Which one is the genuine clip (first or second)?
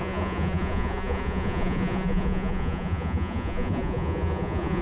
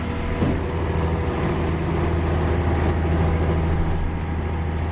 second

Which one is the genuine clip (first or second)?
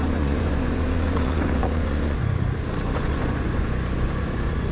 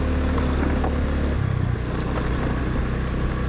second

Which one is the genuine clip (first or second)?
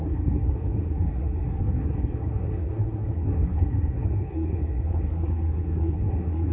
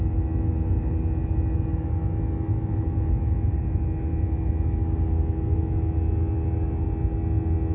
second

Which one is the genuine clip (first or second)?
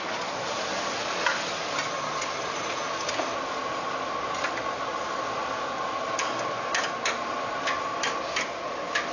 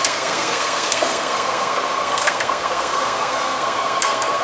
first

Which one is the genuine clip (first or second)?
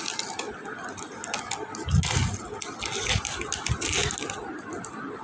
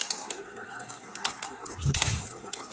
first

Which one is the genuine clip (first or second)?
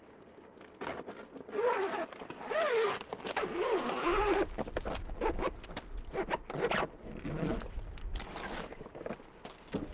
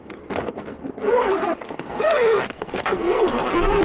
first